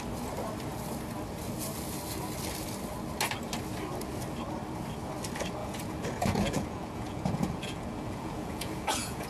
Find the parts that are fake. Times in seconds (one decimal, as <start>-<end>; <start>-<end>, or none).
5.6-9.3